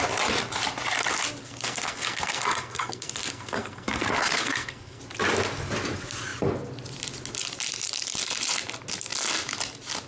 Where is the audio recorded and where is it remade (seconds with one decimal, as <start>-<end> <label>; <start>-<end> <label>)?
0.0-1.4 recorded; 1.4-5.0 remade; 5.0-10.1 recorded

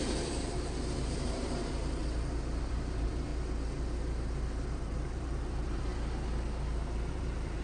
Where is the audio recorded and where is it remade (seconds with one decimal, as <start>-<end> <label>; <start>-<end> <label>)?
0.0-2.0 remade; 2.0-2.6 recorded; 2.6-3.3 remade; 3.3-4.8 recorded; 4.8-5.9 remade; 5.9-7.1 recorded; 7.1-7.6 remade

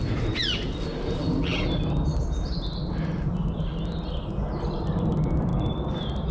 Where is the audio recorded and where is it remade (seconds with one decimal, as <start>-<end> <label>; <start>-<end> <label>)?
0.0-6.3 recorded